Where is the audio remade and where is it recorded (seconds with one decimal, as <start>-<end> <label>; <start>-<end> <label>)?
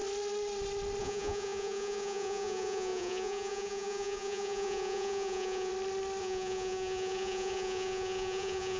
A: 0.0-1.0 recorded; 1.0-5.7 remade; 5.7-6.2 recorded; 6.2-8.8 remade